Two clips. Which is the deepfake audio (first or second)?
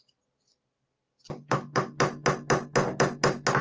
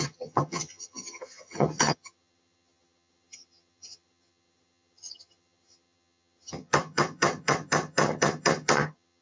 second